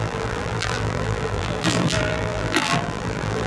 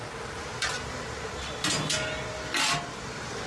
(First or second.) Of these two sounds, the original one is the second